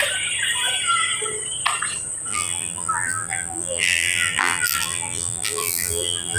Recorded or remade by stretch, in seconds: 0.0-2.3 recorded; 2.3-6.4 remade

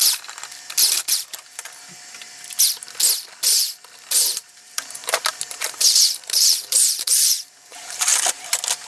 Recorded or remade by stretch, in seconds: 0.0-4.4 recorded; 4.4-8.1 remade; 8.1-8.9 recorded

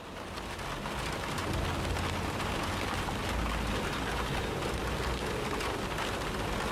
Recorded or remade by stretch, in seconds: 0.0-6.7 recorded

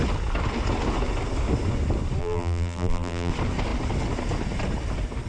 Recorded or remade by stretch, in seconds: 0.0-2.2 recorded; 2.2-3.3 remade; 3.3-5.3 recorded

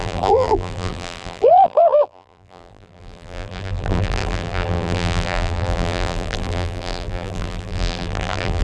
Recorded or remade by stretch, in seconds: 0.0-8.6 remade

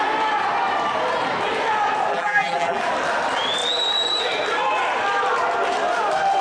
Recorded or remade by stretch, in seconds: 0.0-2.1 recorded; 2.1-2.8 remade; 2.8-6.4 recorded